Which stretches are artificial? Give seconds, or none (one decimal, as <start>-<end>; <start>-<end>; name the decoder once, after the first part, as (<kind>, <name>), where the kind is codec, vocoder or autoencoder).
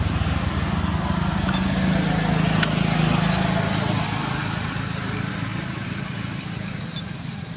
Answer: none